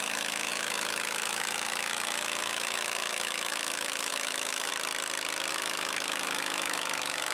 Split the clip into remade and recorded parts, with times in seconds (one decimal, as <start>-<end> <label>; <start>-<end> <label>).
0.0-4.7 remade; 4.7-5.5 recorded; 5.5-7.3 remade